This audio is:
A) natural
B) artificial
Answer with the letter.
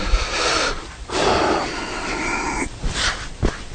A